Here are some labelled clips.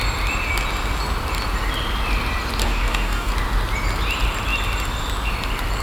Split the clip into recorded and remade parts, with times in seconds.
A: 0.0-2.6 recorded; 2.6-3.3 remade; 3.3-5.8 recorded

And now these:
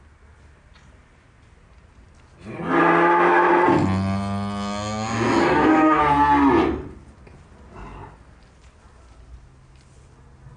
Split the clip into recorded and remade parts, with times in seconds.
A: 0.0-5.4 recorded; 5.4-6.0 remade; 6.0-10.6 recorded

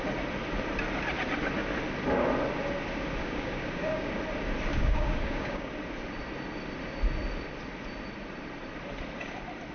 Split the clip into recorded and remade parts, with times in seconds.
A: 0.0-3.2 recorded; 3.2-4.2 remade; 4.2-4.7 recorded; 4.7-5.7 remade; 5.7-9.7 recorded